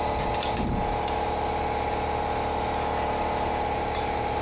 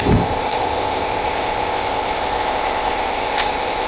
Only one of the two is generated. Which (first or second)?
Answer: second